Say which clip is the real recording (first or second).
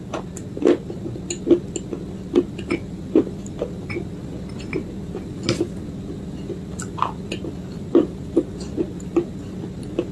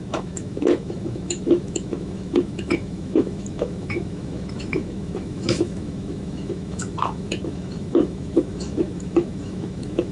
first